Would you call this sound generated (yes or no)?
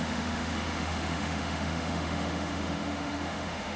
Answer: yes